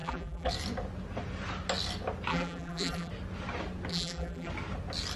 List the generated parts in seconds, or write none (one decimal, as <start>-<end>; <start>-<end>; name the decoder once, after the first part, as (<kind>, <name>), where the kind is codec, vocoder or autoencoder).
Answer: 0.0-0.5 (vocoder, BigVGAN v2); 2.3-3.1; 3.9-4.5